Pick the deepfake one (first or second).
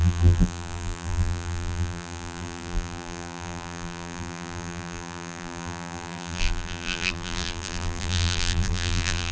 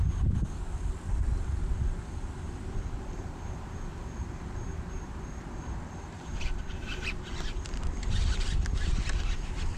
first